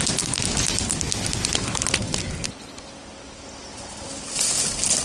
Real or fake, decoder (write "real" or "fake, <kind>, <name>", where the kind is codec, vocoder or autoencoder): real